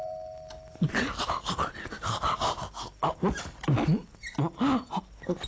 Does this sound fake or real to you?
real